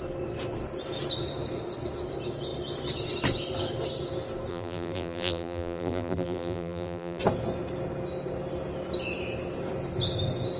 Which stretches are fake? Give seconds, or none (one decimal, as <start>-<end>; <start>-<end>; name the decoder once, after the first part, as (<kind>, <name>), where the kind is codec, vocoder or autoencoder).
4.5-7.2 (vocoder, BigVGAN v2)